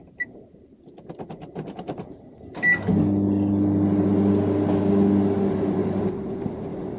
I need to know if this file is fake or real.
real